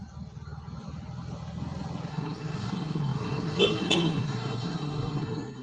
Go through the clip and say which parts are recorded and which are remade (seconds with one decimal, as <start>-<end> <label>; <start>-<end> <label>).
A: 0.0-2.1 recorded; 2.1-5.6 remade